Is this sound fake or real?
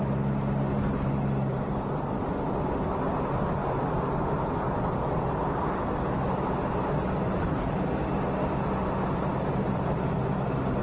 real